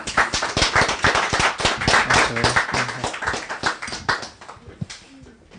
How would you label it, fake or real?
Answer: real